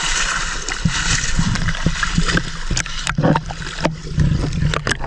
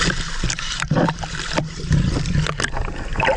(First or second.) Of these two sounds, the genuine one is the first